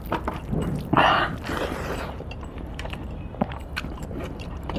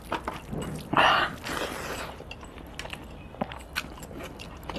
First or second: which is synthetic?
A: first